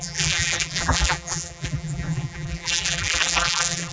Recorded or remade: remade